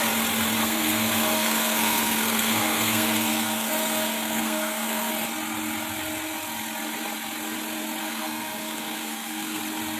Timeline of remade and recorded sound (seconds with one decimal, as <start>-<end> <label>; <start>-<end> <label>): 0.0-0.6 recorded; 0.6-5.1 remade; 5.1-8.0 recorded; 8.0-9.6 remade; 9.6-10.0 recorded